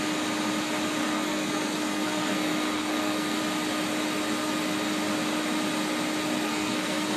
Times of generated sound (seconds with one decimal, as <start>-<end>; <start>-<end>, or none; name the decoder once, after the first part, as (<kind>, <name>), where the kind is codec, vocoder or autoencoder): 1.0-3.4 (codec, SNAC); 6.5-7.2